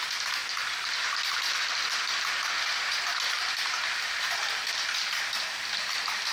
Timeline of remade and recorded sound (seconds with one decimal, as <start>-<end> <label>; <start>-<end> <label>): 0.0-0.4 recorded; 0.4-4.2 remade; 4.2-6.3 recorded